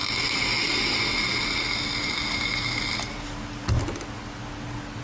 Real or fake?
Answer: real